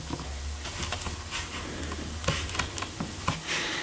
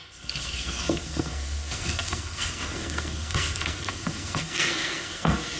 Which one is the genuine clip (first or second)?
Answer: first